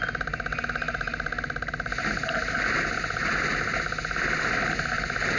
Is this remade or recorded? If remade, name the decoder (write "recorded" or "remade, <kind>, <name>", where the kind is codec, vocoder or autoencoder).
recorded